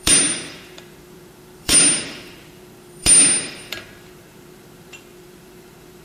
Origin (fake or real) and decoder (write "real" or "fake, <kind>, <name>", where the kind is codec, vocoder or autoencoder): fake, vocoder, BigVGAN v2